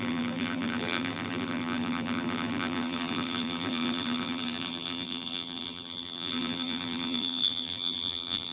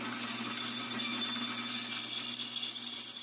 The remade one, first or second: first